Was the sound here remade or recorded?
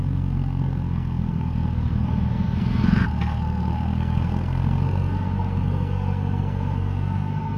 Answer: remade